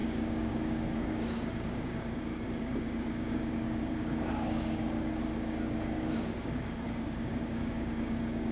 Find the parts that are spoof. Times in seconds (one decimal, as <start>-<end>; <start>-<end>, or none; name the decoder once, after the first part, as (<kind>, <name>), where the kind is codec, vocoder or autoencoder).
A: 0.0-8.5 (codec, DAC)